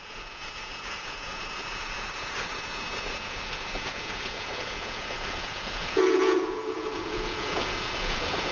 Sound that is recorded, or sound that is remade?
remade